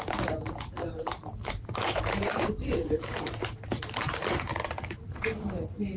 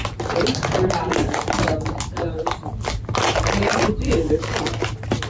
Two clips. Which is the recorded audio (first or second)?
second